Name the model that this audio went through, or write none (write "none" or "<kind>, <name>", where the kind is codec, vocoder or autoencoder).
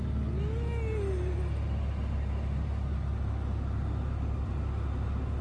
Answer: none